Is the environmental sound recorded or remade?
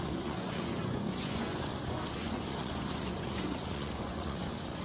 remade